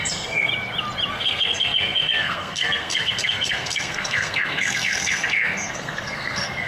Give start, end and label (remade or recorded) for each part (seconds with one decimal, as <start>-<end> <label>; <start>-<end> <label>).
0.0-0.5 remade; 0.5-1.1 recorded; 1.1-6.7 remade